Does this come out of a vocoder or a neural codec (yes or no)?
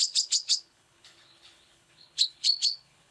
yes